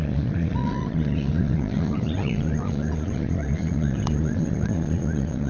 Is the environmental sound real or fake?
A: fake